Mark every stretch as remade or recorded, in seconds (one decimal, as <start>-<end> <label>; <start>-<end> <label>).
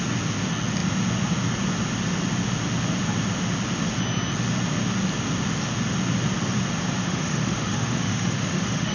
0.0-7.0 recorded; 7.0-8.9 remade